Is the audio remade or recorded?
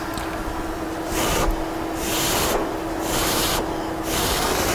recorded